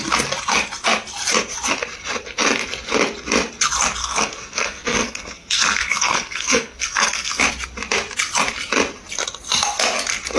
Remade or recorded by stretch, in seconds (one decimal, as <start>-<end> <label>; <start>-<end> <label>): 0.0-4.0 recorded; 4.0-7.4 remade; 7.4-10.4 recorded